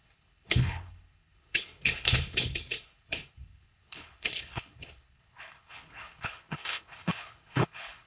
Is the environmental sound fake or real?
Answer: fake